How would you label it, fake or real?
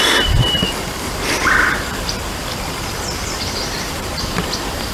fake